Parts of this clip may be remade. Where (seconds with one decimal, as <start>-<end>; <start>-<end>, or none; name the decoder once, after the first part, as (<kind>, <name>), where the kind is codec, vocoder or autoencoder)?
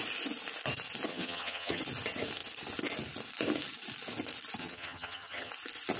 1.1-1.8 (vocoder, HiFi-GAN); 4.6-5.5